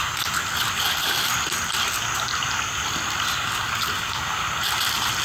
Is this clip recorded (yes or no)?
yes